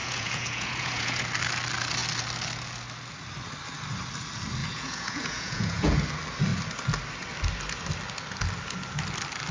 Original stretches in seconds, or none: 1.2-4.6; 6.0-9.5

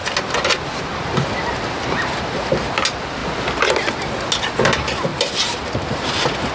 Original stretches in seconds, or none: 0.0-6.5

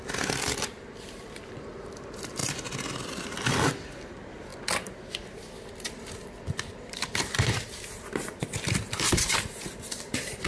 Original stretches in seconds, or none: none

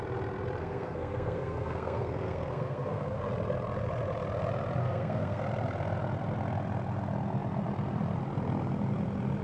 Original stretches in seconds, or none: 0.0-0.6; 3.2-4.8; 5.4-9.4

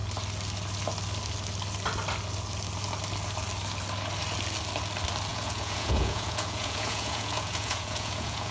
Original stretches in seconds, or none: 0.0-5.3

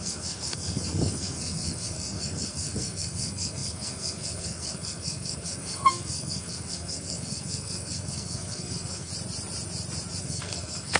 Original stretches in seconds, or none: 9.1-10.2

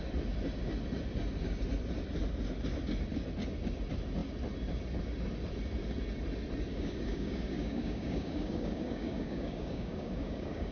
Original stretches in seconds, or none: 0.0-6.7